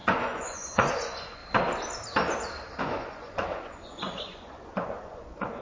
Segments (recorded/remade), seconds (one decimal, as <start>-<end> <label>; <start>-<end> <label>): 0.0-1.4 remade; 1.4-2.8 recorded; 2.8-5.6 remade